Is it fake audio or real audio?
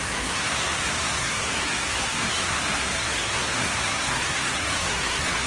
fake